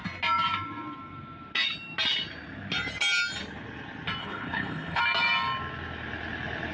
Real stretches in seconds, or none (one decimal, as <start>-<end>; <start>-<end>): 0.0-4.2; 5.0-6.7